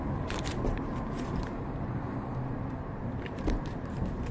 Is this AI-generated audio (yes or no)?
yes